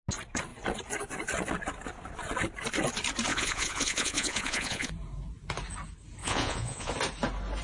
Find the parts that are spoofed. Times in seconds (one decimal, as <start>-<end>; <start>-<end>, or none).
3.3-4.9; 6.2-6.9